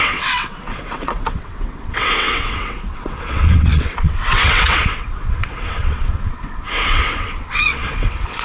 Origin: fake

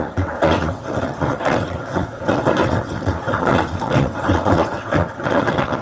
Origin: fake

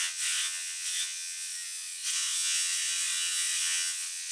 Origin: fake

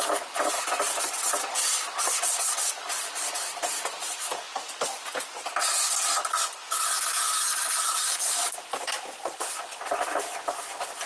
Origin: real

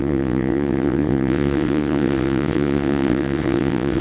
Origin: fake